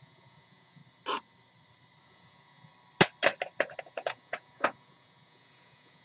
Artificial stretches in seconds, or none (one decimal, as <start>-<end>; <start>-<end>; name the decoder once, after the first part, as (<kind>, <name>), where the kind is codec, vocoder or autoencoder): 0.0-0.8 (vocoder, Vocos); 2.0-2.7; 3.8-6.0